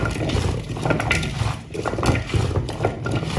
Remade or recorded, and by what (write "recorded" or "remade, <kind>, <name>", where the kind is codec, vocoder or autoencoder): recorded